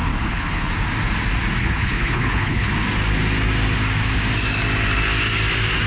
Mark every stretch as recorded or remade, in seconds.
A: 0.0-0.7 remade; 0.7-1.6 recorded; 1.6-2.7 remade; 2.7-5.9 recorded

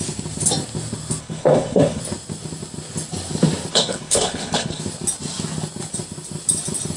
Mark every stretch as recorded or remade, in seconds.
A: 0.0-1.2 recorded; 1.2-2.0 remade; 2.0-3.7 recorded; 3.7-4.8 remade; 4.8-7.0 recorded

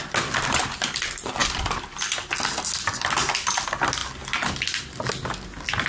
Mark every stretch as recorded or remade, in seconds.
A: 0.0-5.9 recorded

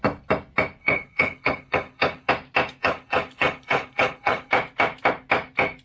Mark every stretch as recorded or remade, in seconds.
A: 0.0-0.8 recorded; 0.8-2.3 remade; 2.3-2.8 recorded; 2.8-4.5 remade; 4.5-5.8 recorded

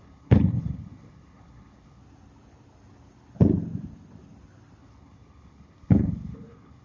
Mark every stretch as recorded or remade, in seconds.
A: 0.0-2.0 remade; 2.0-4.8 recorded; 4.8-6.8 remade